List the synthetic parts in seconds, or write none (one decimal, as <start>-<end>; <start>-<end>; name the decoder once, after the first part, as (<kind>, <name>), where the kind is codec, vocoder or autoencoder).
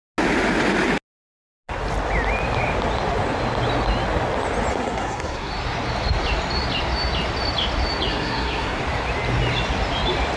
4.7-5.5 (codec, SNAC); 8.1-8.8